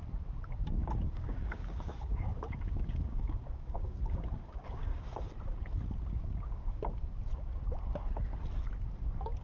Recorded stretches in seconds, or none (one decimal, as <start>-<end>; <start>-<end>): 0.0-0.8; 5.3-6.2; 6.8-9.4